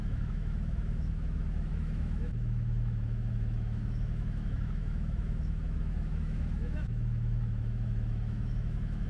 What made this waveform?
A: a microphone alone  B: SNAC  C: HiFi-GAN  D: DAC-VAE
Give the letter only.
D